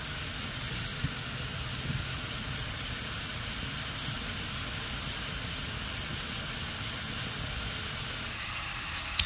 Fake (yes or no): no